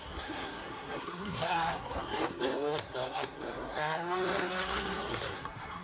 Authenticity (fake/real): fake